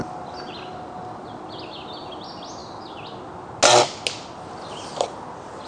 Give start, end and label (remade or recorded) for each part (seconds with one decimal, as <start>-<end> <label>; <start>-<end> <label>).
0.0-5.7 recorded